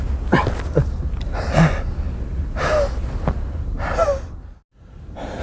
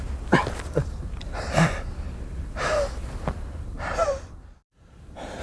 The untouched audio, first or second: first